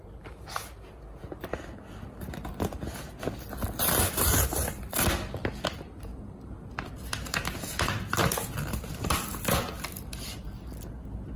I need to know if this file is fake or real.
real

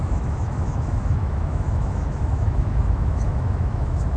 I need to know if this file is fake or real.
fake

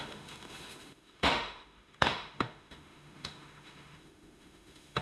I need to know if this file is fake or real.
fake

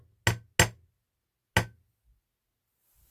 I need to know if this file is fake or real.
real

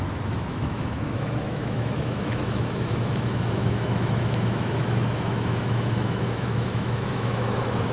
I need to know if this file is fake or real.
fake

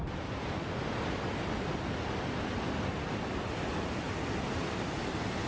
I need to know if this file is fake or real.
real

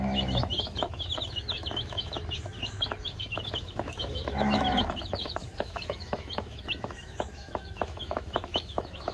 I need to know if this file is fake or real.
fake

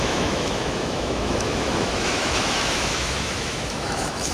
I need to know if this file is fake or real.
fake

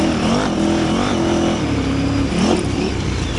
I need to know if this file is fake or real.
real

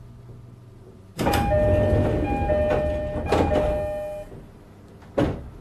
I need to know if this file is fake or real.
real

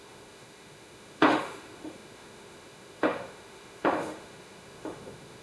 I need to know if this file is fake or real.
fake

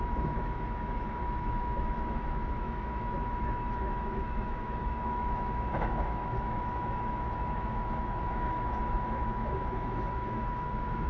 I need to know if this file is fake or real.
fake